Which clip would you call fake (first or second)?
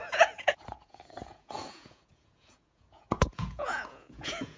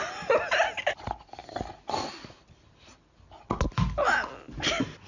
first